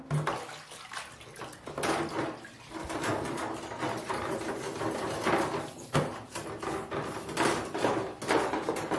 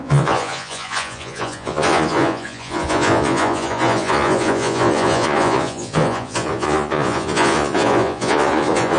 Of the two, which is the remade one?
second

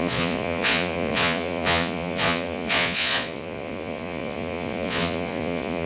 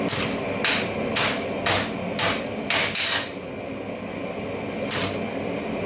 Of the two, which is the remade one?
first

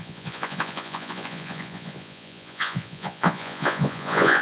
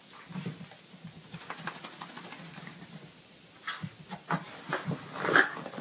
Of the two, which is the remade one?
first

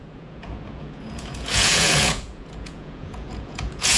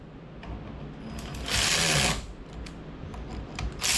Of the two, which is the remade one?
first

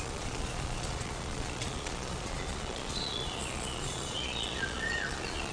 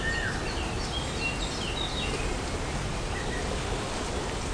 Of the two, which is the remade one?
first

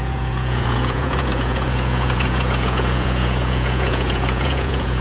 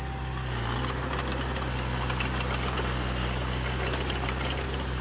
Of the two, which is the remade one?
first